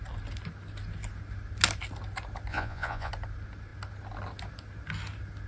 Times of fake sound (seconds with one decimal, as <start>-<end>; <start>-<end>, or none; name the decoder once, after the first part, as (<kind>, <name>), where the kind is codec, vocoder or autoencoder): 2.5-3.1 (vocoder, Vocos)